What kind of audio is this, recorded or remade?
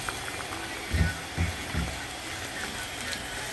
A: recorded